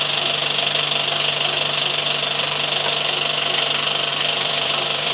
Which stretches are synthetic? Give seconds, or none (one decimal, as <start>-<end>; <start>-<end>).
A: 4.1-5.1